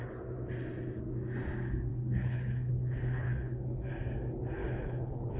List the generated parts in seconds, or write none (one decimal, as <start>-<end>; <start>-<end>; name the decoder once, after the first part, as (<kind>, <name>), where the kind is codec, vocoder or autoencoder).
1.9-3.9 (codec, HILCodec); 4.6-5.4

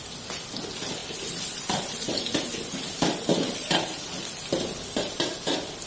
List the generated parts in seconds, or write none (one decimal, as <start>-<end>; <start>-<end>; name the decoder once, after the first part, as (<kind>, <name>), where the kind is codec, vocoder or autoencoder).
1.0-2.4 (vocoder, BigVGAN v2); 3.3-4.3

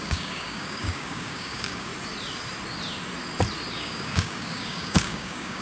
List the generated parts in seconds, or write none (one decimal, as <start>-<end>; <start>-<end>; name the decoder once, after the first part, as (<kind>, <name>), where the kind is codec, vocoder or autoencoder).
0.0-1.9 (codec, DAC); 3.7-5.6

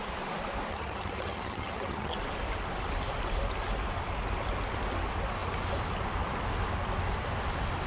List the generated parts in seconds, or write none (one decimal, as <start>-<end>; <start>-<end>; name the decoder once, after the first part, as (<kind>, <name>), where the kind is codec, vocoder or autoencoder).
0.7-2.2 (vocoder, HiFi-GAN)